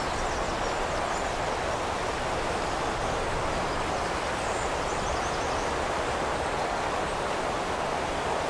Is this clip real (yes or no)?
yes